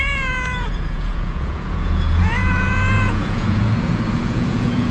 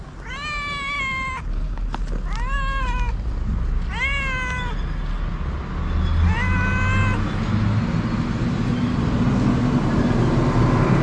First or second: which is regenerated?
first